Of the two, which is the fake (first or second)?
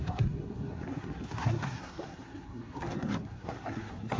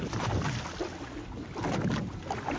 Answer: first